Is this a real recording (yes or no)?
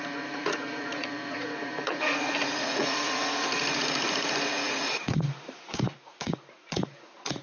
no